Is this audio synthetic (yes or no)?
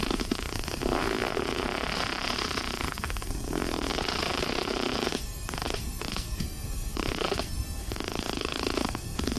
yes